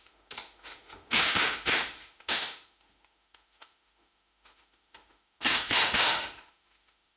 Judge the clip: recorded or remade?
remade